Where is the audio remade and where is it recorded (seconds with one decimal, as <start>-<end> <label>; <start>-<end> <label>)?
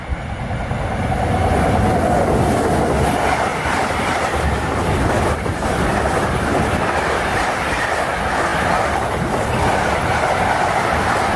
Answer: 0.0-3.5 recorded; 3.5-5.5 remade; 5.5-7.3 recorded; 7.3-8.0 remade; 8.0-11.4 recorded